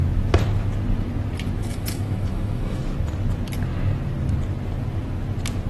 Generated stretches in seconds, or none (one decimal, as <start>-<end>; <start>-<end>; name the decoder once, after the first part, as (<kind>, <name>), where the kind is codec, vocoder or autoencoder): 1.6-2.8 (autoencoder, DAC-VAE)